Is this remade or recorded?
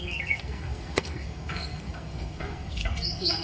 remade